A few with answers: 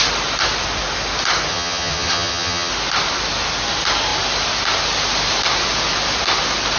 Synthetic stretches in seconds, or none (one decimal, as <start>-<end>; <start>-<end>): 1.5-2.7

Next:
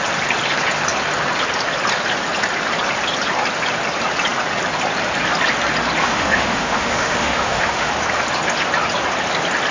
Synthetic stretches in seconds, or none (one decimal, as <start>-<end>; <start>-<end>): 6.0-7.9

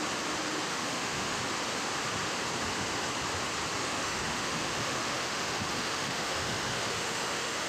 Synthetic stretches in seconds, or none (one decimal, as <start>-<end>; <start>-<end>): 0.7-1.4; 3.8-7.7

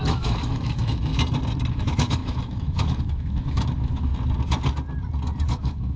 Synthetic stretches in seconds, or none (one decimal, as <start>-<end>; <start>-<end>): 0.0-1.1; 1.7-4.1; 5.5-6.0

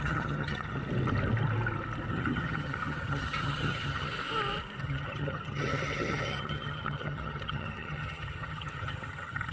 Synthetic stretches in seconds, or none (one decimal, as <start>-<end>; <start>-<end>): 0.0-0.8; 2.1-4.1; 4.8-9.5

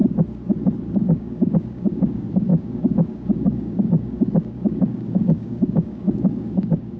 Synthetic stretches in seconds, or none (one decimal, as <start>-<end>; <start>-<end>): 0.9-7.0

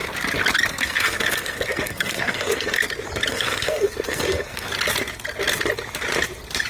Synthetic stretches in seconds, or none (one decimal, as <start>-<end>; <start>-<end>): 0.7-2.8; 3.3-4.7

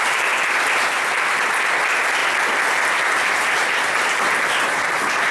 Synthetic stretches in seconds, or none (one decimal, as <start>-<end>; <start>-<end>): none